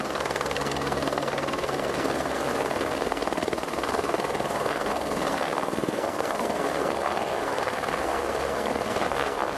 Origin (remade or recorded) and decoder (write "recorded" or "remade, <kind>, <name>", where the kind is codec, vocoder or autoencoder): remade, codec, SNAC